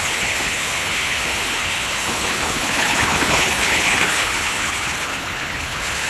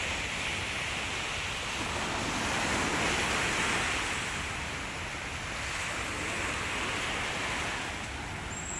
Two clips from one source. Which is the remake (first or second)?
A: first